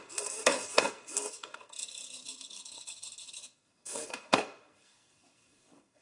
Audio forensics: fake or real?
fake